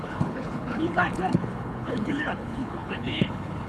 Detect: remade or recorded remade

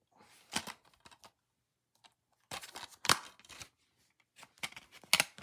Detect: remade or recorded recorded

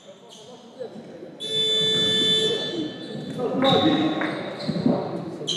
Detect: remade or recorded recorded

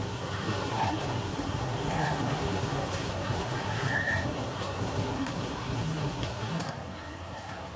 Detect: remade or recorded remade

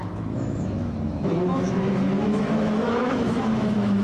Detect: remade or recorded remade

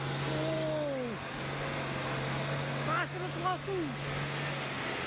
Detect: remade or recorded recorded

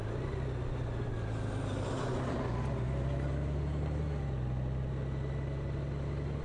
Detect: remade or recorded recorded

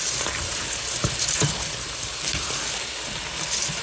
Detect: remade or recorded remade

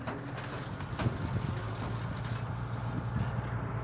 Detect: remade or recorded recorded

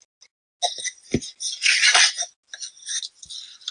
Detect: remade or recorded recorded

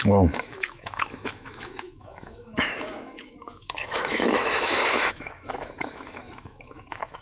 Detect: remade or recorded remade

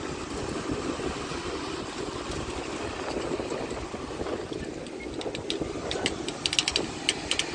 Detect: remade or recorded recorded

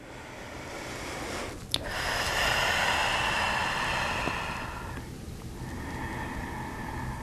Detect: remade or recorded recorded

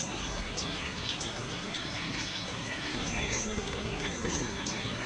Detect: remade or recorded remade